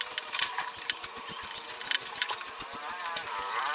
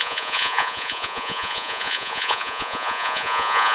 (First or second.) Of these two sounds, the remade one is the second